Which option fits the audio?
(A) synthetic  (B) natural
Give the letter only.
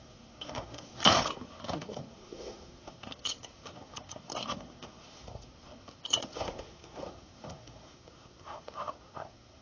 A